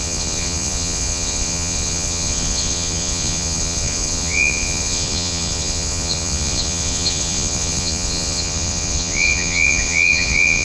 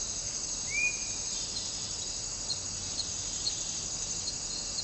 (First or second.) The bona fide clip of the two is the second